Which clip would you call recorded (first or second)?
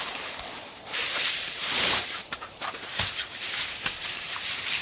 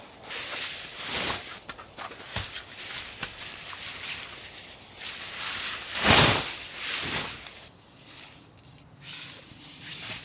second